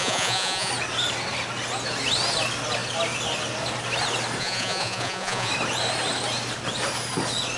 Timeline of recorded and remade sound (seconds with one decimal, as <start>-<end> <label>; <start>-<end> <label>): 0.0-0.7 remade; 0.7-4.4 recorded; 4.4-5.5 remade; 5.5-7.6 recorded